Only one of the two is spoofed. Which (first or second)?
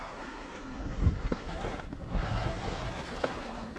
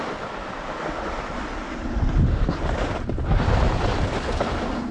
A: first